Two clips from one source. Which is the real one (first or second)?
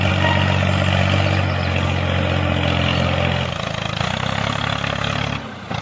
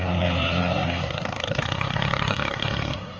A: first